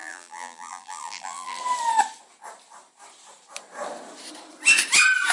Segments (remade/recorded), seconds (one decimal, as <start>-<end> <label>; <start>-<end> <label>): 0.0-1.6 remade; 1.6-5.3 recorded